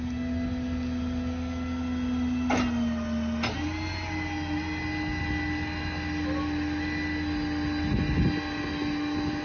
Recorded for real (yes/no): yes